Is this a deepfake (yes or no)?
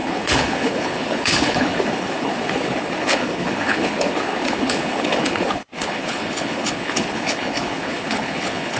yes